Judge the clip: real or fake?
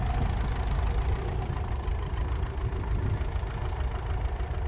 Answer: real